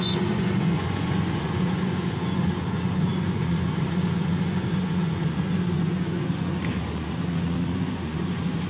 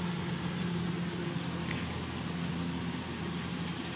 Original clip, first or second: second